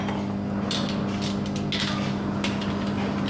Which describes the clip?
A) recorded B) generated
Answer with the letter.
A